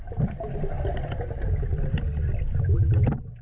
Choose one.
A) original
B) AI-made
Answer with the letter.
A